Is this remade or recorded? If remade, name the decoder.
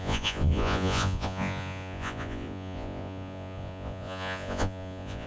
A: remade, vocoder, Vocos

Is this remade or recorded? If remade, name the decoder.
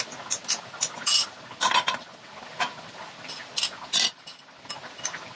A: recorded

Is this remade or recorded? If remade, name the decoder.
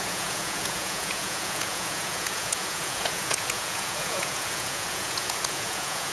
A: remade, vocoder, Vocos